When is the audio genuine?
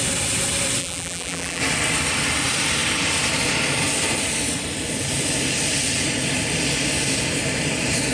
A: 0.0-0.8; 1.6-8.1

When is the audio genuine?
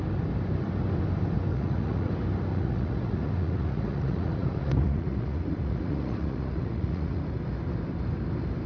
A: 0.0-1.5; 2.1-2.5; 7.2-8.7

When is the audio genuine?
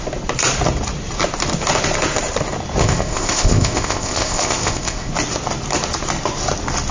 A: 0.0-2.8; 5.1-6.9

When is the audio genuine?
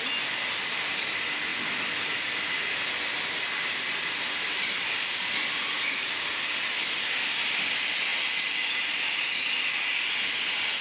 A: 0.0-10.8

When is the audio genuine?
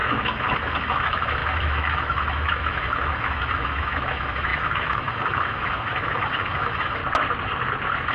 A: 7.0-8.1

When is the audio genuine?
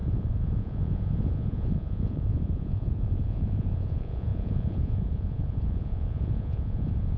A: none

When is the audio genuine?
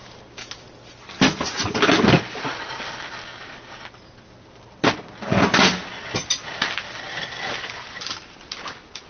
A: 0.0-9.1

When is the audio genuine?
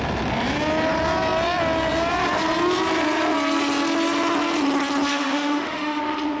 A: 0.0-5.1; 6.0-6.4